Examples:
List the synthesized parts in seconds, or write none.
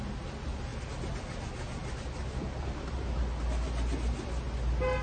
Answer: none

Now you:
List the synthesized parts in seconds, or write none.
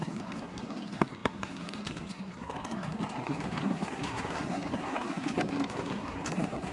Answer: 0.0-6.7 (codec, SNAC)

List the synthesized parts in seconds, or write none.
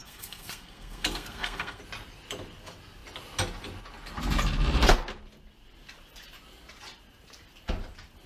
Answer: 0.0-1.8 (codec, SNAC)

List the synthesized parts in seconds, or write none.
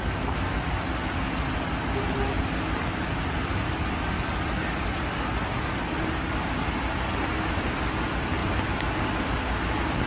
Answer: none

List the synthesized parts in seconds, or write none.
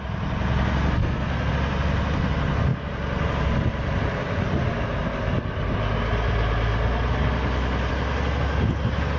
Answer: 1.0-1.5 (codec, SNAC)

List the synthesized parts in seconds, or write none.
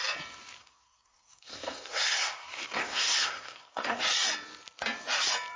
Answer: 0.6-4.0 (codec, SNAC)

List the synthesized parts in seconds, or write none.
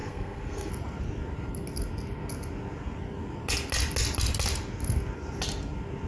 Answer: 0.0-0.7 (codec, SNAC)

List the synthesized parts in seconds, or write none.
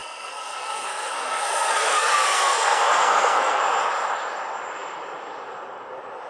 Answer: 0.0-3.6 (codec, SNAC)